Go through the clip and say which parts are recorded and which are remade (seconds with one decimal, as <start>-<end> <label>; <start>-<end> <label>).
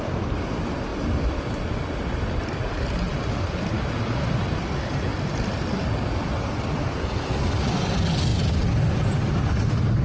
0.0-0.9 recorded; 0.9-1.6 remade; 1.6-3.1 recorded; 3.1-3.7 remade; 3.7-5.1 recorded; 5.1-5.7 remade; 5.7-8.3 recorded; 8.3-10.0 remade